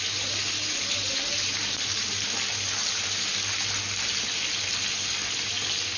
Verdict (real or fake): real